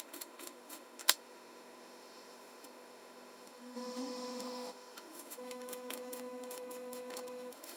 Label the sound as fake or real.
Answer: fake